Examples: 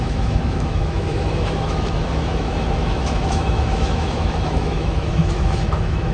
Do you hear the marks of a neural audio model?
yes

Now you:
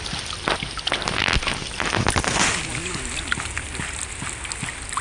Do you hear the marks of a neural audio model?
no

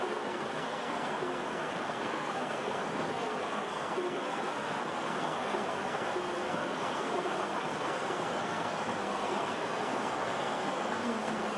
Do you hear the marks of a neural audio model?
yes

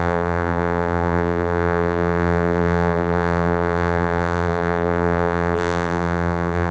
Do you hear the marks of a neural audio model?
yes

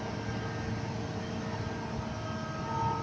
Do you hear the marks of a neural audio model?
no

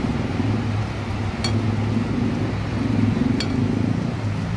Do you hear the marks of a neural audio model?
no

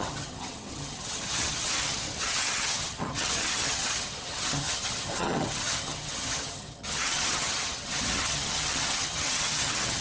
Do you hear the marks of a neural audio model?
yes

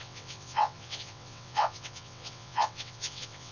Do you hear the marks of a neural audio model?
yes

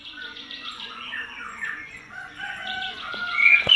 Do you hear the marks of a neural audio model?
yes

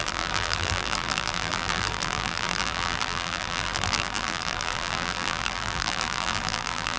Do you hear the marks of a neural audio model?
yes